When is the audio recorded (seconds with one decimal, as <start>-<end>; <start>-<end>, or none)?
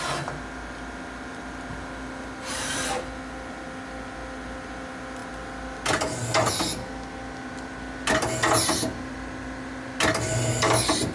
0.0-11.1